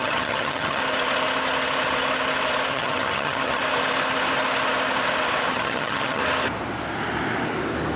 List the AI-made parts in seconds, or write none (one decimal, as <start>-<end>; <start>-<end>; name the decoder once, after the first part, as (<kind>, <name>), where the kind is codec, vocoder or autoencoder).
0.0-0.8 (vocoder, HiFi-GAN); 2.7-3.6; 5.5-6.2